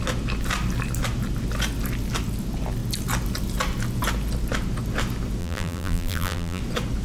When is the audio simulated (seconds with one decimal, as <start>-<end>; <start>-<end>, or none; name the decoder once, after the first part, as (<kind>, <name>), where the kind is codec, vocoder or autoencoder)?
5.4-6.6 (vocoder, BigVGAN v2)